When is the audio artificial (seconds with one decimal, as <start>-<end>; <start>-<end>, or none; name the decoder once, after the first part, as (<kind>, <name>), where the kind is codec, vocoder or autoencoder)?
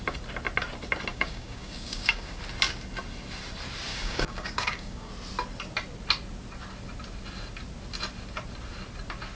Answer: 1.1-2.4 (codec, DAC); 3.9-5.1